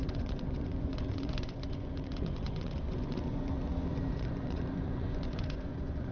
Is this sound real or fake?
fake